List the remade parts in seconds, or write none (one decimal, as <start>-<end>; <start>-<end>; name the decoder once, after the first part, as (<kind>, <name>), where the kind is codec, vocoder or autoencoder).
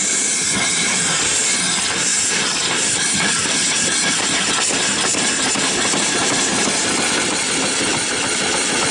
2.1-6.9 (vocoder, BigVGAN v2)